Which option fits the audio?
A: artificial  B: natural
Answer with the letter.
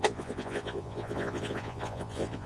A